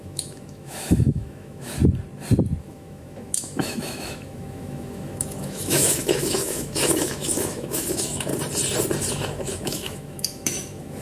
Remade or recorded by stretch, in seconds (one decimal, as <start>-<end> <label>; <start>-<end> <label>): 0.0-1.8 remade; 1.8-2.6 recorded; 2.6-8.3 remade; 8.3-9.1 recorded; 9.1-11.0 remade